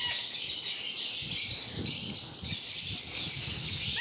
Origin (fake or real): real